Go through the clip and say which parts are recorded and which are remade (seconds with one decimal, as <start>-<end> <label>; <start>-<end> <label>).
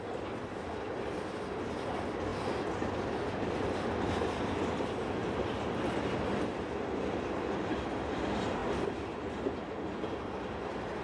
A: 0.0-11.0 recorded